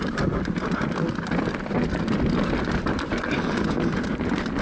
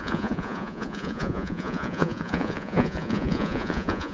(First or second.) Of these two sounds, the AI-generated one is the second